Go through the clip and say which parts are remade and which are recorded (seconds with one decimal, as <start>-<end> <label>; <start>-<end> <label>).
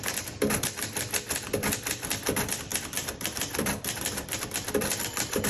0.0-5.5 remade